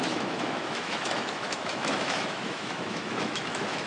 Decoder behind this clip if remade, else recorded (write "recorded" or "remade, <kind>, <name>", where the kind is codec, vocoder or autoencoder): remade, autoencoder, DAC-VAE